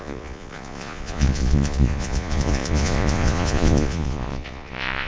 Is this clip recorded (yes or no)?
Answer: no